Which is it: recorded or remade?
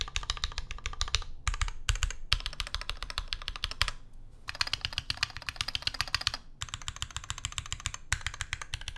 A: recorded